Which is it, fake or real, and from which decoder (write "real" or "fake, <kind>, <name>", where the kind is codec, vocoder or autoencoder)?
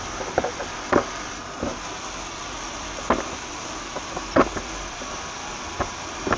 real